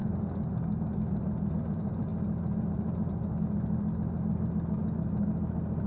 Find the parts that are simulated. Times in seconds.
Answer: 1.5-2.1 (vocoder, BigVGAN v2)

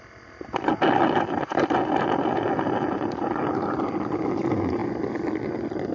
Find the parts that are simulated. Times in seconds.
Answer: none